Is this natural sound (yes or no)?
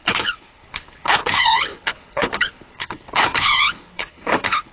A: no